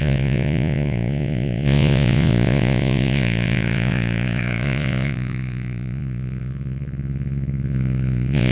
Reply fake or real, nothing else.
fake